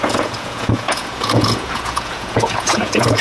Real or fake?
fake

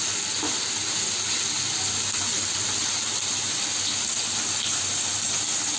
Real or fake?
real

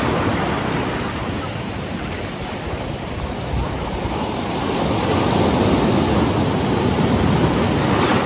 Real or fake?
real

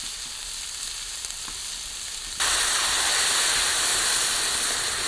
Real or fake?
real